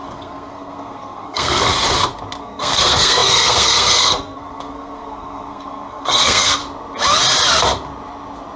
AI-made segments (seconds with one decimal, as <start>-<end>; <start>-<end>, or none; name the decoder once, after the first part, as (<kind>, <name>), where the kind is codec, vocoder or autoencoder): 0.0-1.7 (codec, SNAC); 2.4-6.6